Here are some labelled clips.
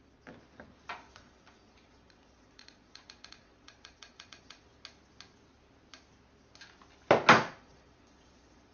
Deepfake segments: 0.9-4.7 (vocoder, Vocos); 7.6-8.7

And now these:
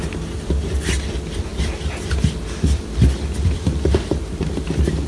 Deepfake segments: 1.5-4.5 (vocoder, BigVGAN v2)

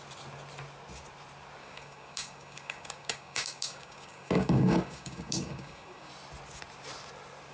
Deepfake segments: 1.6-6.1 (codec, DAC)

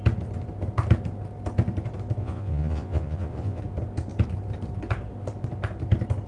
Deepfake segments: 2.2-3.6 (vocoder, Vocos)

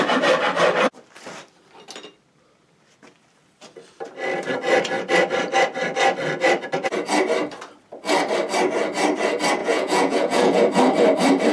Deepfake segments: 9.6-10.6 (vocoder, Vocos)

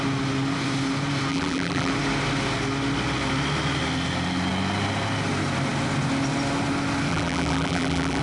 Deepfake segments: 1.3-1.9 (vocoder, BigVGAN v2); 7.1-8.2

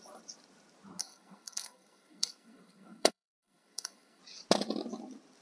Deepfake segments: 1.0-4.2 (codec, SNAC)

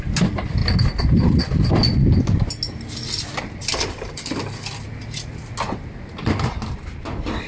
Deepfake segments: none